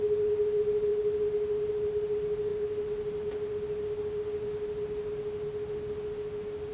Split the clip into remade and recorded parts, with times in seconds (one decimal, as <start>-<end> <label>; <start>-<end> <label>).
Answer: 0.0-6.7 recorded